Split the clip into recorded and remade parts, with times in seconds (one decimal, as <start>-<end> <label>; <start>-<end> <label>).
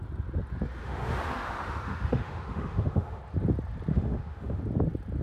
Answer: 0.0-0.8 recorded; 0.8-3.2 remade; 3.2-3.9 recorded; 3.9-4.6 remade; 4.6-5.2 recorded